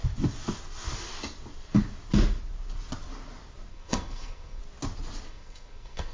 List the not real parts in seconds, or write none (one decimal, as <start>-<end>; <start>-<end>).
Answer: 3.7-4.6; 5.3-6.1